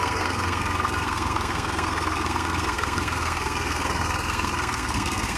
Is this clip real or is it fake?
fake